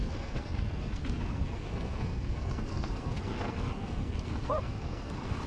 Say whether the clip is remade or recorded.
remade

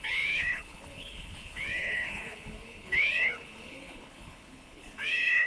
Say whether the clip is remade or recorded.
remade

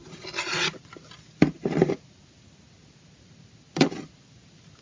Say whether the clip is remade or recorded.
recorded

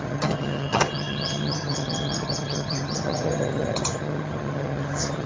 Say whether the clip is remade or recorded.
remade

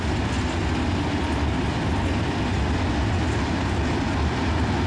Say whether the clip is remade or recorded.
recorded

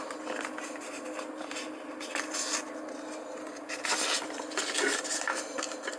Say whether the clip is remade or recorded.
recorded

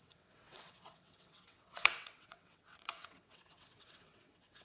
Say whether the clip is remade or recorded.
remade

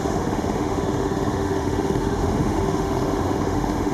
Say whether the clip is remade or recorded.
remade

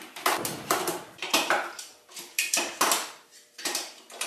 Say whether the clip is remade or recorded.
remade